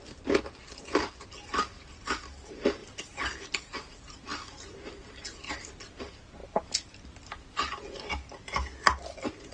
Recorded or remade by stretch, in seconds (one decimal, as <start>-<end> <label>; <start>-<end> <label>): 0.0-9.5 recorded